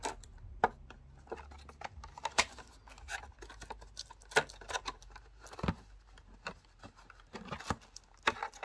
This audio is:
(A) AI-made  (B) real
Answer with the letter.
B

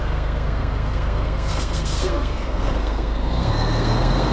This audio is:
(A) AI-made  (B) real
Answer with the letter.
A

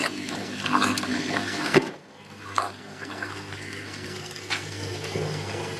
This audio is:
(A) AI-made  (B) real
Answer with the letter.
A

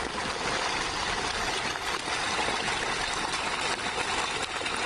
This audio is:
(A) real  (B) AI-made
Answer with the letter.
A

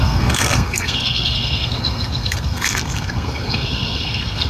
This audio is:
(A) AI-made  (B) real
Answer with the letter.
A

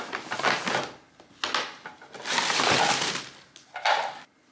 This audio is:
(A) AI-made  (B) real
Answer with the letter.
B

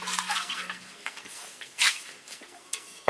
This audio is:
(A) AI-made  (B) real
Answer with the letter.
A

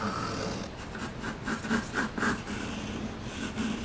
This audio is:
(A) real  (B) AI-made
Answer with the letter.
A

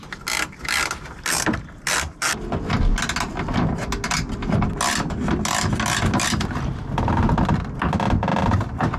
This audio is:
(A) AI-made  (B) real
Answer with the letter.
B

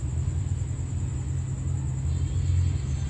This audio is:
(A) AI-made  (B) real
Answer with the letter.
B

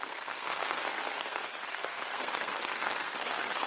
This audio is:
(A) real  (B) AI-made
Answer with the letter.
B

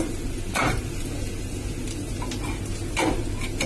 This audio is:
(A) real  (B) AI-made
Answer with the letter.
A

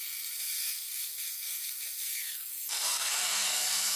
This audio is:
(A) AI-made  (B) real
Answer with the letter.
A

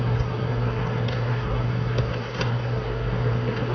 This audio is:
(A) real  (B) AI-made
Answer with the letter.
B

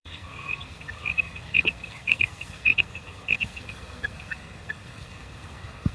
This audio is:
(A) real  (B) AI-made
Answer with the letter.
B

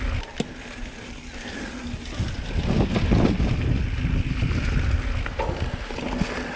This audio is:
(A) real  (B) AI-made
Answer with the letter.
A